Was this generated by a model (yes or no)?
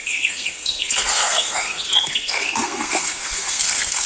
yes